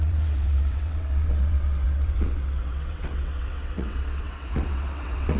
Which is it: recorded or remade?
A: remade